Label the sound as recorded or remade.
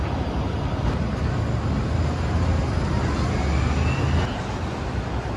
recorded